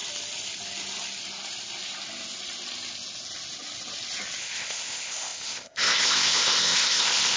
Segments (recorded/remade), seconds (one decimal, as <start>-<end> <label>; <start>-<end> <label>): 0.0-4.4 recorded; 4.4-7.4 remade